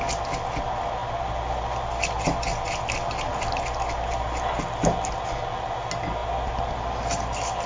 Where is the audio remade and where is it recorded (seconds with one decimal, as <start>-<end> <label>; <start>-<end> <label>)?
0.0-7.7 recorded